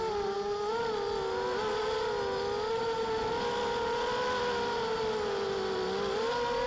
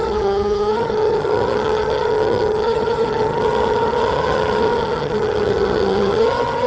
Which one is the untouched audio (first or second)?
first